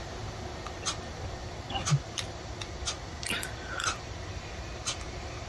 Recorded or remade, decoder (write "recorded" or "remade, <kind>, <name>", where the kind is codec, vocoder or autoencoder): recorded